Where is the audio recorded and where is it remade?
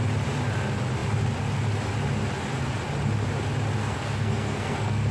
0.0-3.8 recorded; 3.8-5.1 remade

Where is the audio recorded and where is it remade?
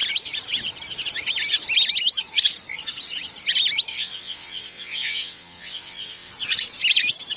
0.0-3.9 recorded; 3.9-6.3 remade; 6.3-7.4 recorded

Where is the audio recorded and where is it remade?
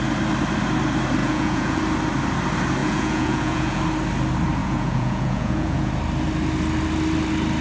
0.0-1.2 recorded; 1.2-1.8 remade; 1.8-2.8 recorded; 2.8-3.8 remade; 3.8-4.6 recorded; 4.6-5.9 remade; 5.9-7.6 recorded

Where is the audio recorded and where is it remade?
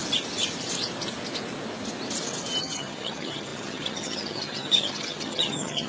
0.0-2.6 recorded; 2.6-5.9 remade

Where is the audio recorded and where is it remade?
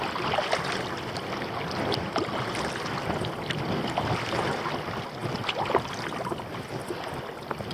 0.0-7.7 recorded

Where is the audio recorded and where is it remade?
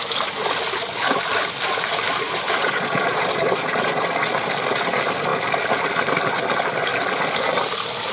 0.0-2.6 recorded; 2.6-4.3 remade; 4.3-8.1 recorded